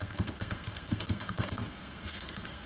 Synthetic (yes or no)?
yes